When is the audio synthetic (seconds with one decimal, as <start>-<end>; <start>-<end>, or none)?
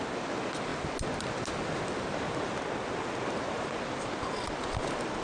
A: none